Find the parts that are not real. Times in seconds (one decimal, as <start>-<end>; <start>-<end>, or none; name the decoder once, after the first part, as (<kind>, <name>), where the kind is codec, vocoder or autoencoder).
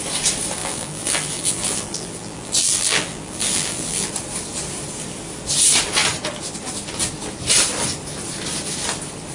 0.6-4.1 (vocoder, BigVGAN v2)